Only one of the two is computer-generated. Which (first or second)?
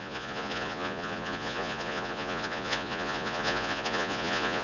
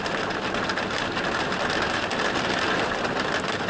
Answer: first